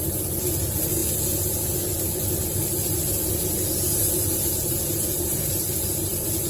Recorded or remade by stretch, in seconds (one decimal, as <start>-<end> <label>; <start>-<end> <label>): 0.0-1.0 remade; 1.0-3.5 recorded; 3.5-6.5 remade